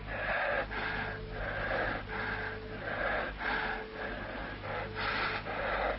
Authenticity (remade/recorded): recorded